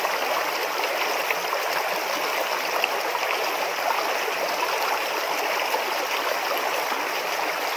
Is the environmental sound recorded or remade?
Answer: recorded